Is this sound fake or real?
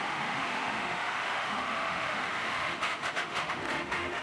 fake